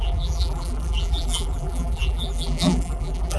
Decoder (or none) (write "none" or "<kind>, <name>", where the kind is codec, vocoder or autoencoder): vocoder, BigVGAN v2